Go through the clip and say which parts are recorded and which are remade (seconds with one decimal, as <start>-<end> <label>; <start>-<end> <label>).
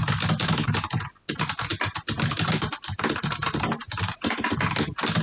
0.0-5.2 recorded